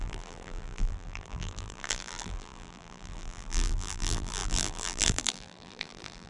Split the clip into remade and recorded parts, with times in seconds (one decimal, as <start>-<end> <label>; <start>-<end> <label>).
0.0-6.3 remade